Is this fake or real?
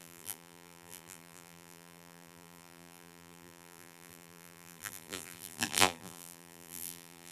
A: fake